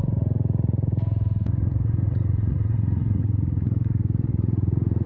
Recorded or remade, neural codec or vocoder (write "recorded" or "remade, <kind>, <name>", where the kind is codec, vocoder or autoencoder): remade, vocoder, Vocos